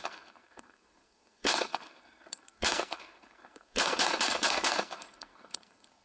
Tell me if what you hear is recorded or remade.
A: remade